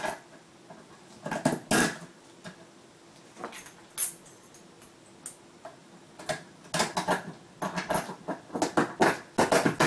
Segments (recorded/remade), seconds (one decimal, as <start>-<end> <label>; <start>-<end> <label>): 0.0-9.9 recorded